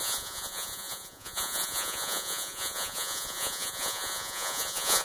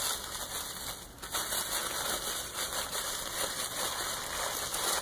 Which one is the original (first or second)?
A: second